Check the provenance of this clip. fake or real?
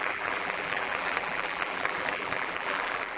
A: fake